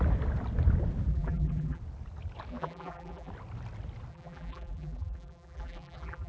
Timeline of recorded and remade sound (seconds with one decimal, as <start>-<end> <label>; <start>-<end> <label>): 0.0-1.1 recorded; 1.1-1.8 remade; 1.8-2.5 recorded; 2.5-3.3 remade; 3.3-4.1 recorded; 4.1-6.3 remade